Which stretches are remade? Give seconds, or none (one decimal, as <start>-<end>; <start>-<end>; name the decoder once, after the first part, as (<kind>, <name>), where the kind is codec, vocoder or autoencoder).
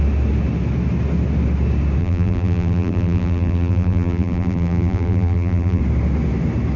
2.0-5.8 (vocoder, BigVGAN v2)